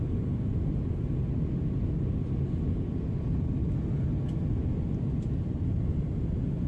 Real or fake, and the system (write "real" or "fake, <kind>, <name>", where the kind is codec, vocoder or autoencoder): real